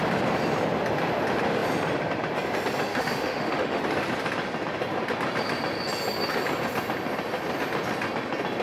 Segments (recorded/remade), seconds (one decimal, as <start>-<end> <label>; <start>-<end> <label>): 0.0-2.9 recorded; 2.9-3.8 remade; 3.8-8.6 recorded

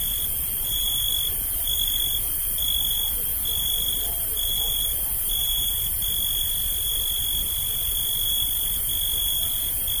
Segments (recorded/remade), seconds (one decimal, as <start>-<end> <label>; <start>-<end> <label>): 0.0-10.0 recorded

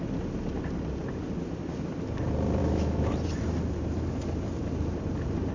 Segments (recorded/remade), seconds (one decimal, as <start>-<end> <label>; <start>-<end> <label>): 0.0-2.6 recorded; 2.6-3.1 remade; 3.1-5.5 recorded

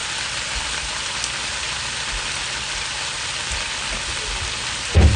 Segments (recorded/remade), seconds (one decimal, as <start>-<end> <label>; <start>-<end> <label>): 0.0-5.2 recorded

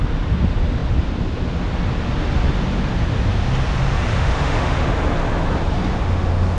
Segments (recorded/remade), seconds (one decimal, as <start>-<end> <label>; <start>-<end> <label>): 0.0-4.1 recorded; 4.1-4.9 remade; 4.9-5.9 recorded; 5.9-6.6 remade